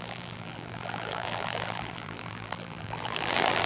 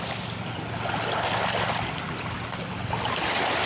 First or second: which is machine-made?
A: first